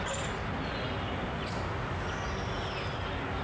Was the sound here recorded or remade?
recorded